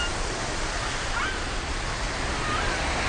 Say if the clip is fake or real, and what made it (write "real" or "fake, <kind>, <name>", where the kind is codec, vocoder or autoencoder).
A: real